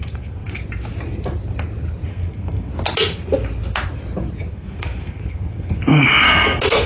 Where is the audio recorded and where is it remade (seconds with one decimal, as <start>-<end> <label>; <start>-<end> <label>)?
0.0-0.6 remade; 0.6-2.1 recorded; 2.1-2.7 remade; 2.7-4.5 recorded; 4.5-6.9 remade